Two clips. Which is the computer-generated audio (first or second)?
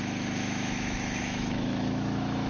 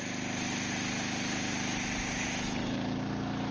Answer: first